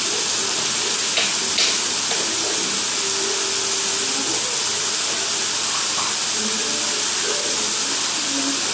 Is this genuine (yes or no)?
yes